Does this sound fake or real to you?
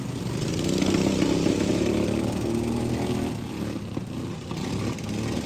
real